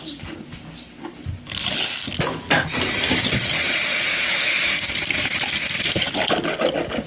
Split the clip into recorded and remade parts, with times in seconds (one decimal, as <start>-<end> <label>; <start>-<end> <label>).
0.0-4.1 recorded; 4.1-4.7 remade; 4.7-7.1 recorded